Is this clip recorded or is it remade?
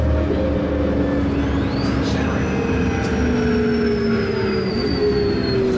recorded